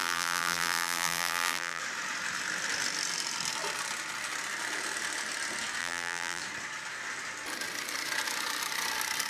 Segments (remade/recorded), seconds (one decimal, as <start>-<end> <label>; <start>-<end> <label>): 0.0-1.8 remade; 1.8-5.8 recorded; 5.8-6.4 remade; 6.4-9.3 recorded